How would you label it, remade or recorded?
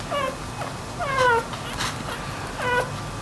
recorded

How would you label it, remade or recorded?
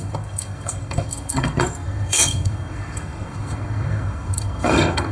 remade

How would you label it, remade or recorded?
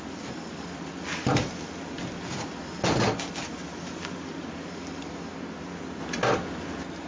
recorded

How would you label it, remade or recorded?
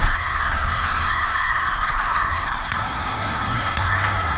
remade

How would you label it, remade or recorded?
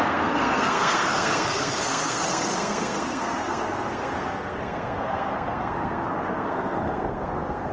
remade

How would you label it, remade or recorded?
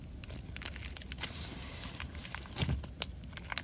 recorded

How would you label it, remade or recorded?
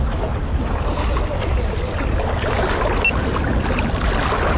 recorded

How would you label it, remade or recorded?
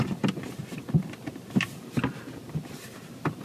recorded